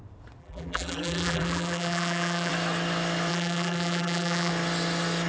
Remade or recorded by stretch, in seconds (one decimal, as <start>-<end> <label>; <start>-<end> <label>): 0.0-0.4 recorded; 0.4-2.5 remade; 2.5-3.3 recorded; 3.3-4.5 remade; 4.5-5.3 recorded